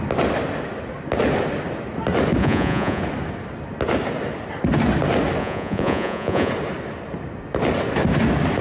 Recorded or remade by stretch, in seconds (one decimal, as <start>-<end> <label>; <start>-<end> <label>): 0.0-2.4 recorded; 2.4-3.0 remade; 3.0-5.4 recorded; 5.4-6.5 remade; 6.5-8.6 recorded

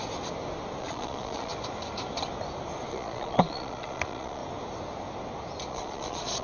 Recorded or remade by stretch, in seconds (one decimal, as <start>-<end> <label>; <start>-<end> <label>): 0.0-0.8 recorded; 0.8-1.5 remade; 1.5-2.9 recorded; 2.9-4.4 remade; 4.4-5.7 recorded; 5.7-6.4 remade

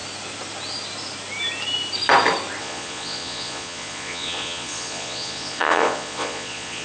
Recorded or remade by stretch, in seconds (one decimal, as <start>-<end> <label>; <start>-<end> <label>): 0.0-2.6 recorded; 2.6-6.8 remade

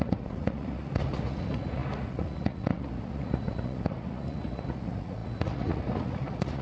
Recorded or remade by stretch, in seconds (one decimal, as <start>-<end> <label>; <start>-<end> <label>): 0.0-6.6 remade

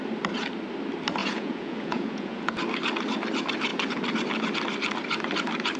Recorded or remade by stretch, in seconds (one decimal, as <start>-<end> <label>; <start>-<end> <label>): 0.0-1.2 recorded; 1.2-2.6 remade; 2.6-5.8 recorded

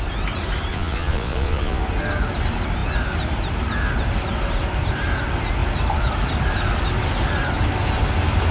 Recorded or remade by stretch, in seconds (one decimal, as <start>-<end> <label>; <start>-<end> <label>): 0.0-0.7 recorded; 0.7-1.8 remade; 1.8-8.5 recorded

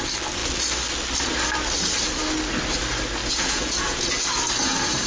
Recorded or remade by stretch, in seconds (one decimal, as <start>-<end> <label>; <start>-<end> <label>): 0.0-3.2 recorded; 3.2-4.0 remade; 4.0-5.1 recorded

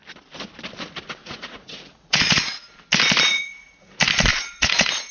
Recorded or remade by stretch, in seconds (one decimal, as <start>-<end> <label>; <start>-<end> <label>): 0.0-1.2 recorded; 1.2-2.7 remade; 2.7-3.3 recorded; 3.3-3.9 remade; 3.9-4.3 recorded; 4.3-5.1 remade